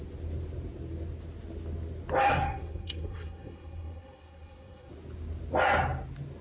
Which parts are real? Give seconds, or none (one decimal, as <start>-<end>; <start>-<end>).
0.0-2.3; 4.9-6.4